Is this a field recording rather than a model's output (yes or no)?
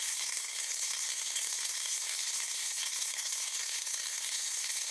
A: no